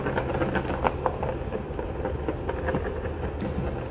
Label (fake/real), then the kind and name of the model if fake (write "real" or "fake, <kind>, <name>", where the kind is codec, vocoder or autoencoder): real